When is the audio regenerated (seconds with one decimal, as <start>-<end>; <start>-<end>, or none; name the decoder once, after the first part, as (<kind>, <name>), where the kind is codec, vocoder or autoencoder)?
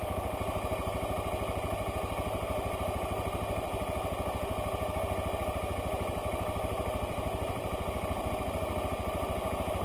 6.2-8.3 (vocoder, BigVGAN v2)